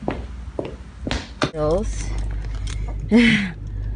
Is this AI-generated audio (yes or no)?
no